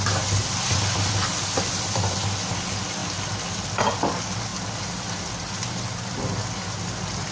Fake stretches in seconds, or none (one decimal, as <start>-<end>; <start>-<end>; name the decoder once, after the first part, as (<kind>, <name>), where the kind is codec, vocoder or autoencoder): none